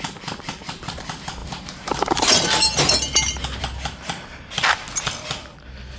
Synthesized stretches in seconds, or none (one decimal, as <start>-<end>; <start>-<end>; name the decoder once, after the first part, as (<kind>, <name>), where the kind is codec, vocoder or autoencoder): none